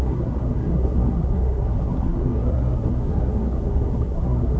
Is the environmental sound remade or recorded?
remade